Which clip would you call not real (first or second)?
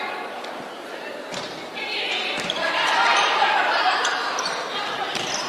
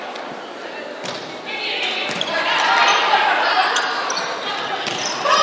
first